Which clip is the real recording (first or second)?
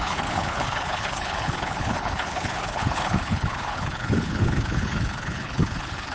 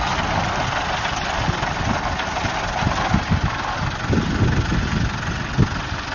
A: second